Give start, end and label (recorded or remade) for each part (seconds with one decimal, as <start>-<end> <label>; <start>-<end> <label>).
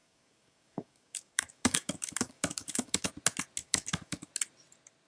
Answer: 0.0-3.1 remade; 3.1-3.6 recorded; 3.6-4.3 remade; 4.3-5.1 recorded